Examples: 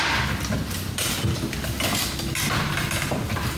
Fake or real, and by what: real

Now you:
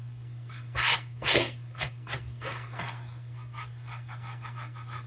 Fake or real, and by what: fake, codec, SNAC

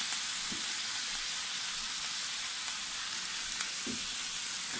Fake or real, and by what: real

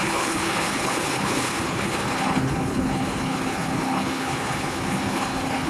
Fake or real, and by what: fake, codec, HILCodec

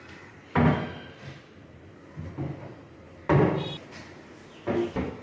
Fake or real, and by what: real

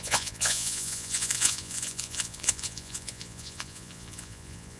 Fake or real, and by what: fake, vocoder, Vocos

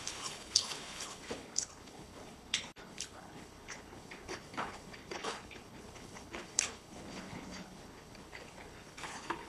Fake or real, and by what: fake, codec, HILCodec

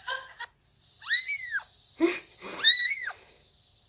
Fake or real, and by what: fake, vocoder, BigVGAN v2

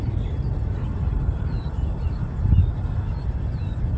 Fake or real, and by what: real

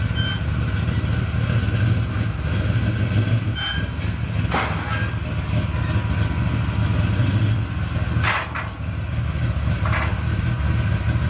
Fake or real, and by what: real